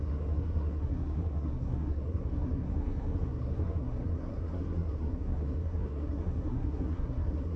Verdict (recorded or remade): remade